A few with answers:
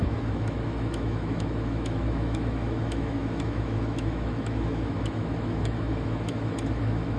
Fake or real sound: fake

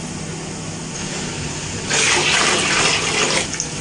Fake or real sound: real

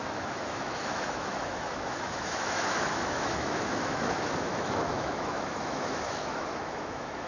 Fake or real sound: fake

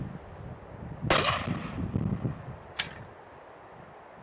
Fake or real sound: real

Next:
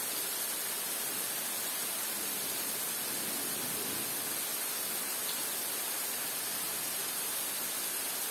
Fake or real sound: real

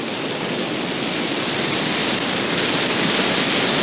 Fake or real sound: real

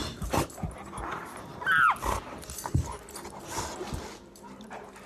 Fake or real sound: real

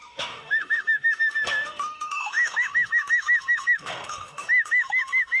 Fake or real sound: fake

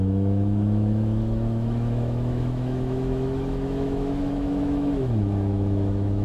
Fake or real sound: fake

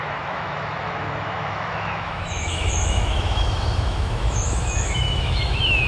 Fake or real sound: fake